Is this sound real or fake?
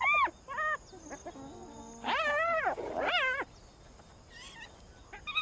real